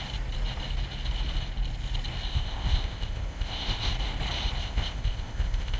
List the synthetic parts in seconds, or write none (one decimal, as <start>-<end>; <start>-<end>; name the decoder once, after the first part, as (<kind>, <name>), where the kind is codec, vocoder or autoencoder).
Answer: 2.3-3.9 (codec, ZipCodec); 4.6-5.8